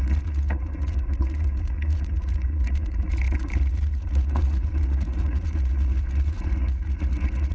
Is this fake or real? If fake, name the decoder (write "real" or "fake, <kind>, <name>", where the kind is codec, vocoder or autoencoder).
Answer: fake, vocoder, Vocos